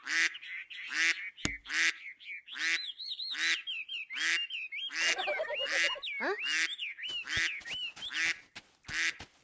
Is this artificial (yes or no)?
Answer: no